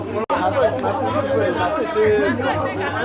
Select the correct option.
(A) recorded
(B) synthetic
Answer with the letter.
A